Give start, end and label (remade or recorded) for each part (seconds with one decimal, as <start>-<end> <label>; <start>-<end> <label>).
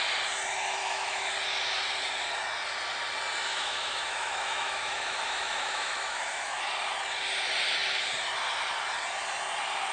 0.0-0.8 recorded; 0.8-1.3 remade; 1.3-3.5 recorded; 3.5-6.6 remade; 6.6-9.9 recorded